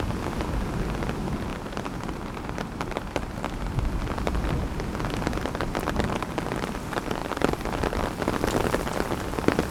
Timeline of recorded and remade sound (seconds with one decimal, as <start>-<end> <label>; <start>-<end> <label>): 0.0-1.5 recorded; 1.5-4.6 remade; 4.6-7.2 recorded; 7.2-8.5 remade; 8.5-9.7 recorded